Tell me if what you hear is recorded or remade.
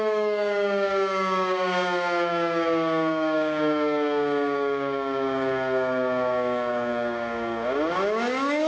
remade